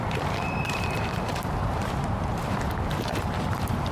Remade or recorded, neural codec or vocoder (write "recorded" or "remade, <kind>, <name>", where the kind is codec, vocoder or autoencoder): remade, vocoder, BigVGAN v2